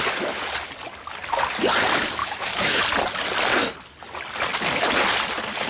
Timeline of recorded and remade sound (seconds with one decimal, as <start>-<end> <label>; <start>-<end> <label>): 0.0-2.2 recorded; 2.2-2.8 remade; 2.8-5.7 recorded